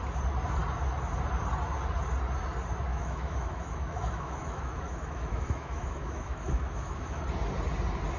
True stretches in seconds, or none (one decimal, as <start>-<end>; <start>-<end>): 0.0-2.9; 7.2-8.2

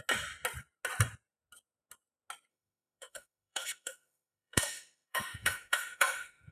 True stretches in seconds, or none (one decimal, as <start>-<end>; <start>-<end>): 0.0-2.5

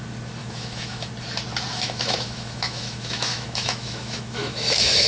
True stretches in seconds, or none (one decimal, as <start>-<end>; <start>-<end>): 0.0-0.4; 1.1-1.7